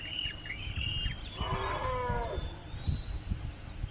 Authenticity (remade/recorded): recorded